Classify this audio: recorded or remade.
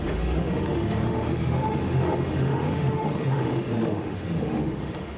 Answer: remade